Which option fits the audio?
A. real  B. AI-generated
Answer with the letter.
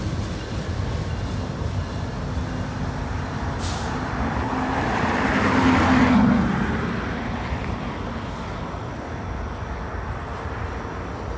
A